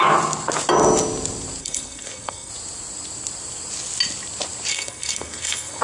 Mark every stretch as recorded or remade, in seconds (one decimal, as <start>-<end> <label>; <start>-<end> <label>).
0.0-1.6 recorded; 1.6-2.5 remade; 2.5-4.7 recorded; 4.7-5.8 remade